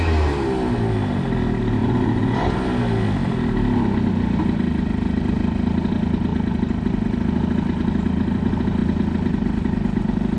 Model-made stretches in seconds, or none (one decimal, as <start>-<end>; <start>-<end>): 1.8-2.5